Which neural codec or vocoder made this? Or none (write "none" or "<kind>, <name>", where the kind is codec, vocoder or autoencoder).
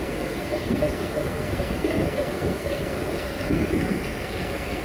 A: codec, SNAC